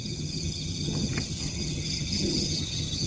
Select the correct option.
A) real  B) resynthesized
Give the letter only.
B